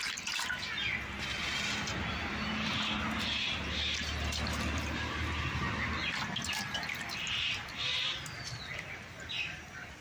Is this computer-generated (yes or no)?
no